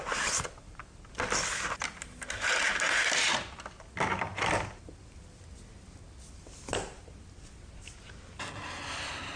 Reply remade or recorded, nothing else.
recorded